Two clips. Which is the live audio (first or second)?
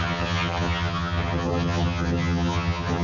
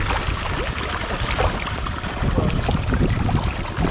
second